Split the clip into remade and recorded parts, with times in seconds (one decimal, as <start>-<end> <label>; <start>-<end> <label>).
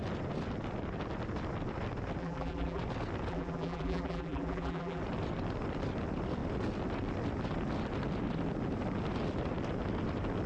0.0-2.2 recorded; 2.2-2.8 remade; 2.8-3.3 recorded; 3.3-5.0 remade; 5.0-10.5 recorded